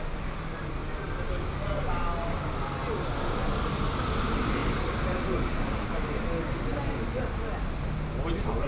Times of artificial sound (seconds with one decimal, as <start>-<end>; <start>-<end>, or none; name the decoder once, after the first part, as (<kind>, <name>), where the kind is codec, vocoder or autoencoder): none